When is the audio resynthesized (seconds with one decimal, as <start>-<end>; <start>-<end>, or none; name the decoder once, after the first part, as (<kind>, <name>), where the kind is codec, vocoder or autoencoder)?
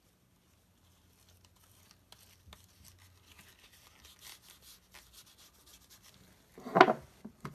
none